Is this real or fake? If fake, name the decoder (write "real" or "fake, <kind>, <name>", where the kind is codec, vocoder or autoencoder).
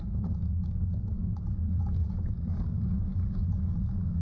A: fake, codec, DAC